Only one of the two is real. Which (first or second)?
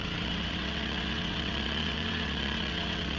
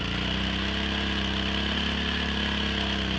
second